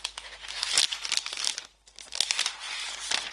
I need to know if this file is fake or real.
real